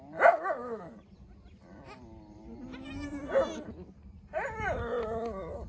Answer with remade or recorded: recorded